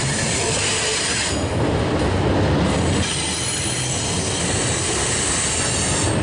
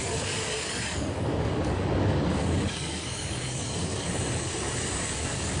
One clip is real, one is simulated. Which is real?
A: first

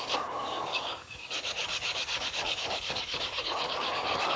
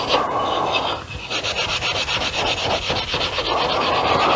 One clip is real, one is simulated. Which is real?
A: second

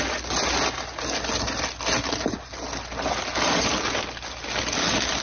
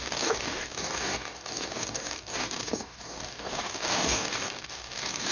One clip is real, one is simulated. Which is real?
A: first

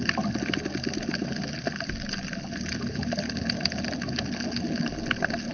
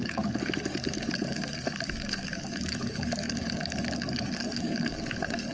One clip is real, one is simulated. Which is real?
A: first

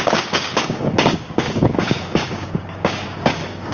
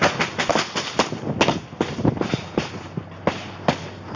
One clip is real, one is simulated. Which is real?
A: second